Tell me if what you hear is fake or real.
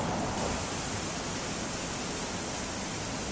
real